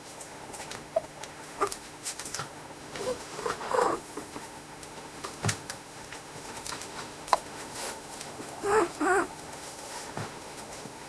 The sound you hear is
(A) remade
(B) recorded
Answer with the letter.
A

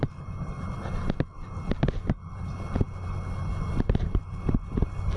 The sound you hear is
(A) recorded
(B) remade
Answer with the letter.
A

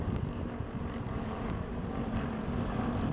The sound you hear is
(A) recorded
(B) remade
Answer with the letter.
A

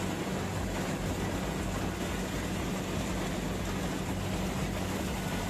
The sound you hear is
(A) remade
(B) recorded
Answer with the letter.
B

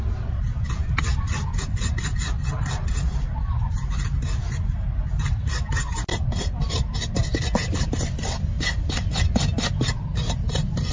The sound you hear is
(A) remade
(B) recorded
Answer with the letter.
B